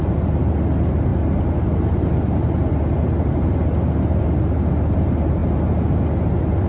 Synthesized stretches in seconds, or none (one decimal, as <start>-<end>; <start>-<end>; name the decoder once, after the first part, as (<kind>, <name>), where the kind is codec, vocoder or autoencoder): none